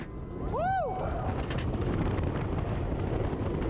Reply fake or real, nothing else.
real